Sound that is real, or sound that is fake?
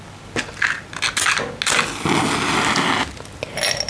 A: real